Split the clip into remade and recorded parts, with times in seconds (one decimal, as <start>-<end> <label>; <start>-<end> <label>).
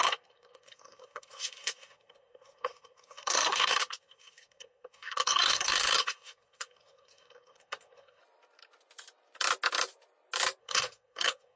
0.0-8.2 remade; 8.2-10.6 recorded; 10.6-11.6 remade